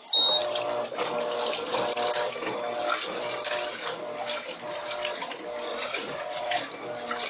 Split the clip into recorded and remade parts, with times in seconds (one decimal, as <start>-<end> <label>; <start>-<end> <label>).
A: 0.0-5.7 recorded; 5.7-6.5 remade; 6.5-7.3 recorded